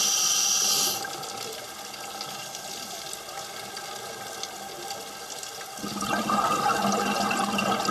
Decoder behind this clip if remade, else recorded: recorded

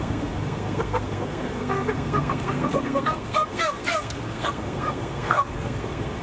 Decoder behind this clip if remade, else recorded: remade, codec, SNAC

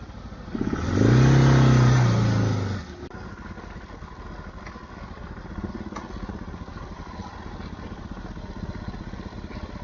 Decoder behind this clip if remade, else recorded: recorded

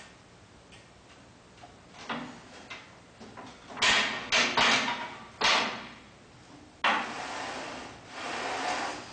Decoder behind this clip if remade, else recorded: recorded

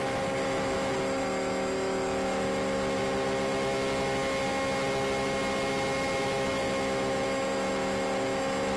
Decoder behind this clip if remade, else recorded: recorded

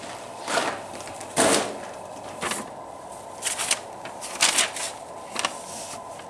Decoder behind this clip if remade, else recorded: recorded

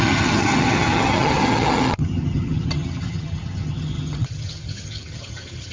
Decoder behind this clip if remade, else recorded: remade, vocoder, HiFi-GAN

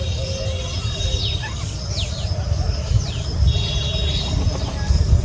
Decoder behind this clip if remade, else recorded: recorded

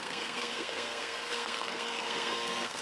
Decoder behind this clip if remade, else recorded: remade, codec, SNAC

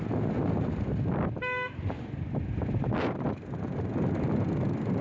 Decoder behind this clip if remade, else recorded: recorded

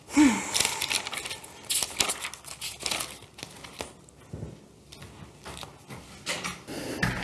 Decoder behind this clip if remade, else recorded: recorded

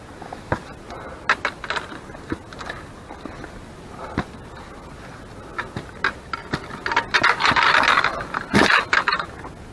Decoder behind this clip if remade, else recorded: recorded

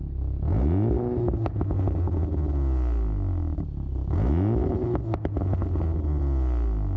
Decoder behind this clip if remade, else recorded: recorded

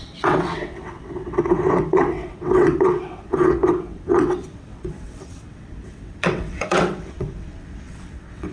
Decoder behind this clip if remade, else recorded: remade, vocoder, WaveNeXt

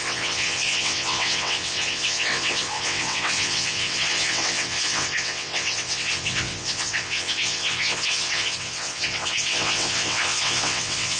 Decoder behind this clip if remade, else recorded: remade, vocoder, WaveNeXt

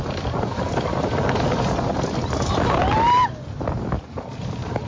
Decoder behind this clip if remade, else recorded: recorded